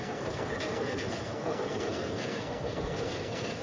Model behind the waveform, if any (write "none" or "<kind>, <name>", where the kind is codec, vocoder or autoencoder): codec, SNAC